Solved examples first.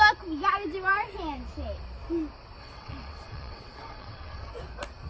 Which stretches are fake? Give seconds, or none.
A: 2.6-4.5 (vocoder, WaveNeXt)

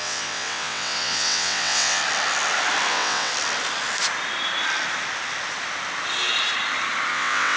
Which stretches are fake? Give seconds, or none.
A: 0.0-2.0 (vocoder, WaveNeXt); 2.9-3.3; 7.1-7.6

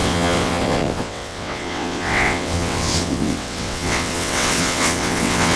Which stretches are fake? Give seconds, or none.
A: 0.0-5.6 (vocoder, WaveNeXt)

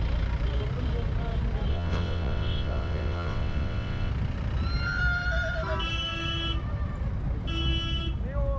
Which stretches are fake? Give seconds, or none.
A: 1.7-4.1 (vocoder, WaveNeXt)